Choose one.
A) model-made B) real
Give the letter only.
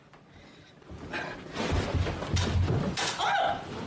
B